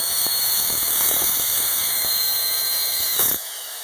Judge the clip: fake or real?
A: fake